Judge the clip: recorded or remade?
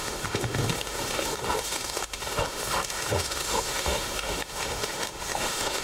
remade